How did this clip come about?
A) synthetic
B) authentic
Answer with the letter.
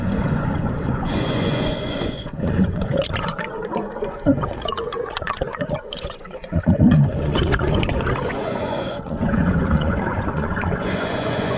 A